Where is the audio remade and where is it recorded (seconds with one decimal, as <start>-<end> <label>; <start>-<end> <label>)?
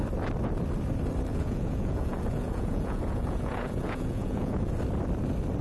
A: 0.0-1.3 recorded; 1.3-4.7 remade; 4.7-5.6 recorded